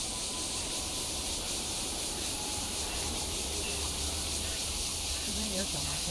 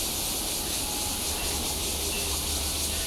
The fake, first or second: first